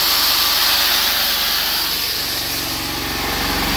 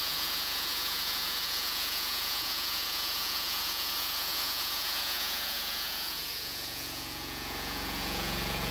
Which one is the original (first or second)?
first